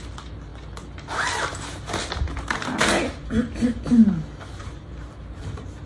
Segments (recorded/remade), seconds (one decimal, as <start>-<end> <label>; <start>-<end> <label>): 0.0-5.9 recorded